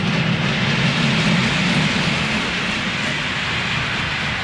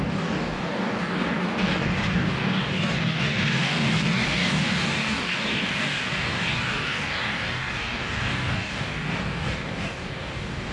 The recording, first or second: first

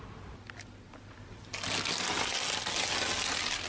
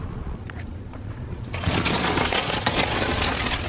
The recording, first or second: first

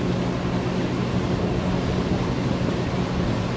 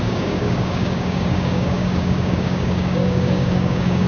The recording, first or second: first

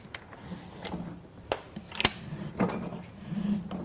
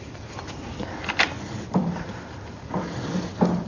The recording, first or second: first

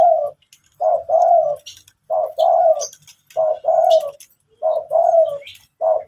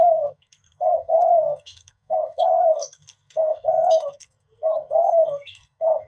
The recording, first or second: first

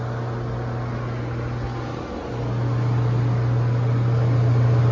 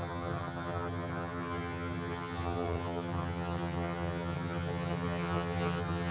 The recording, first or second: first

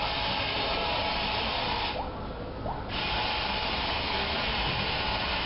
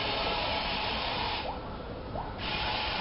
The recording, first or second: first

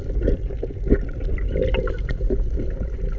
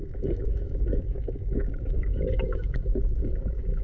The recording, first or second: first